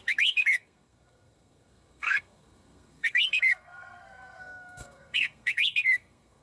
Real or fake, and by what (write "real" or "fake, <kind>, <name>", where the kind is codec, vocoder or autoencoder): fake, codec, SNAC